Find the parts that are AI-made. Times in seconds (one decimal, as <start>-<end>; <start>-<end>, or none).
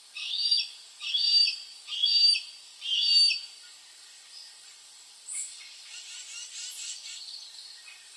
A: none